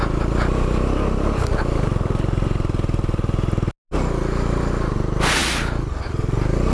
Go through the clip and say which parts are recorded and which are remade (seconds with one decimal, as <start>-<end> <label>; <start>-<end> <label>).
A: 0.0-6.7 recorded